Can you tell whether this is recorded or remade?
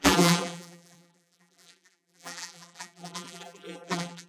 remade